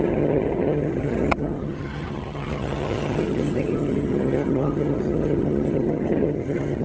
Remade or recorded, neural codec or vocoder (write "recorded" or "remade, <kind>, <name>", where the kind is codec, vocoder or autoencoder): remade, vocoder, HiFi-GAN